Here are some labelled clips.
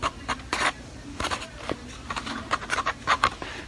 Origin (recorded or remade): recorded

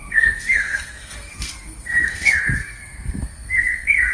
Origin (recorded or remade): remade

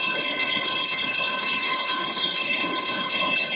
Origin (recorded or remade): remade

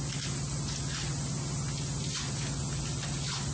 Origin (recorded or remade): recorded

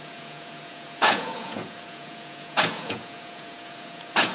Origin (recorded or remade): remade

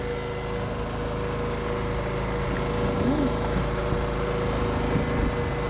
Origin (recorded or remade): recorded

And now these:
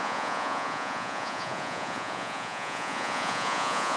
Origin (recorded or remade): remade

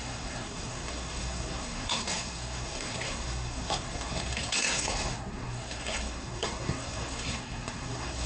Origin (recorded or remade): remade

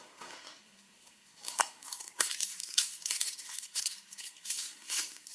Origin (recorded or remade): remade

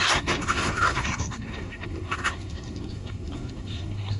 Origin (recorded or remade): remade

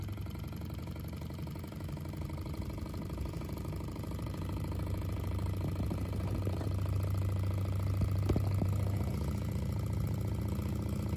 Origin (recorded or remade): recorded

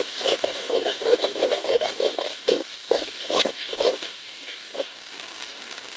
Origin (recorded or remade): remade